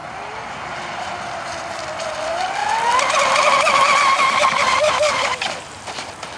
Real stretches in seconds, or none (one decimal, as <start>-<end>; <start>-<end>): 0.0-2.6; 3.4-6.4